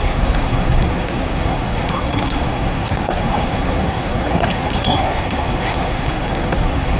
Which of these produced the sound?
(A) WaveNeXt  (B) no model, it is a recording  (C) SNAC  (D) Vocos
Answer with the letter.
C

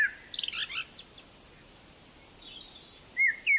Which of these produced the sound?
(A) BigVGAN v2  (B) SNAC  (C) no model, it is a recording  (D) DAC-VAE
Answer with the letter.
C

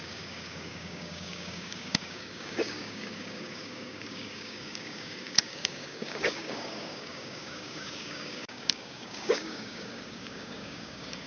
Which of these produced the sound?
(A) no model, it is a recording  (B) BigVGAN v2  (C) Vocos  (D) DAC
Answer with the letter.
D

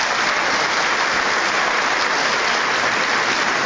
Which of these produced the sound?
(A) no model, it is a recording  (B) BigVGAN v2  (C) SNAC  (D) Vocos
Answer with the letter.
A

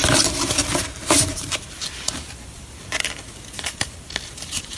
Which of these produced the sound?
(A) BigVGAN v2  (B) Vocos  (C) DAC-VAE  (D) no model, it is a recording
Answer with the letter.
D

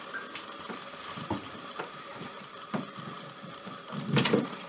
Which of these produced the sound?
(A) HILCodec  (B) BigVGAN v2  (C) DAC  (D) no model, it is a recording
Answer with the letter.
B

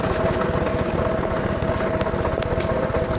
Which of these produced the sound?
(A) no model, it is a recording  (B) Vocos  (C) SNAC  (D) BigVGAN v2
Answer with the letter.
A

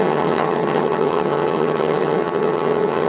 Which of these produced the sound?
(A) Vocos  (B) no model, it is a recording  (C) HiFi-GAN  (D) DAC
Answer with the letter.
C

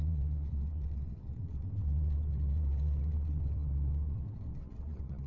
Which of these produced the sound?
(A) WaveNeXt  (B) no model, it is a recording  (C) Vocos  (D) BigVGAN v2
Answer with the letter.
A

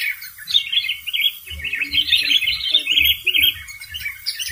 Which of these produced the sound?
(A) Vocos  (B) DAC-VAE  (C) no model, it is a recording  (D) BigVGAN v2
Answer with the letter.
C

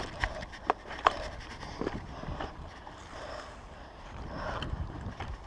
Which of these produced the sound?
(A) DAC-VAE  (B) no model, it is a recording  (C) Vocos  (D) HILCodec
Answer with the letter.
B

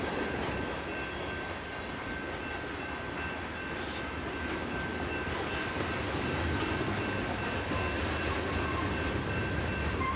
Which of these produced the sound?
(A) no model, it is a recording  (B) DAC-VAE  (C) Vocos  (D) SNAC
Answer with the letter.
A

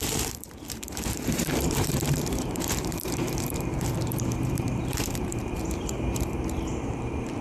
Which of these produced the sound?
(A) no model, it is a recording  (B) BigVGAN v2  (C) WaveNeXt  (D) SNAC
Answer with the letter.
B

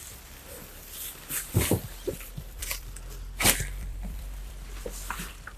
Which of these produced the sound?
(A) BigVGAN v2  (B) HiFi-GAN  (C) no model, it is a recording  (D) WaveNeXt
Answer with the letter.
A